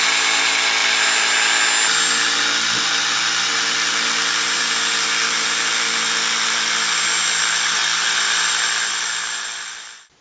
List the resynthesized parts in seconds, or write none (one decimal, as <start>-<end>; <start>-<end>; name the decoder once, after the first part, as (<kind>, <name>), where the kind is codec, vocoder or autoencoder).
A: 7.8-10.2 (vocoder, BigVGAN v2)